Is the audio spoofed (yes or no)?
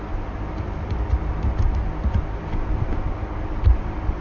no